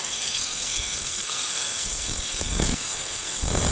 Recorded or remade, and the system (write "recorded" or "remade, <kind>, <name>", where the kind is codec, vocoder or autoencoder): remade, codec, SNAC